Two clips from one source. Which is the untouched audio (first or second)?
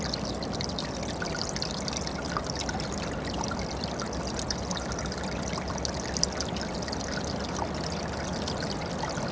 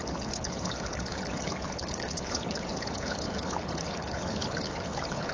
first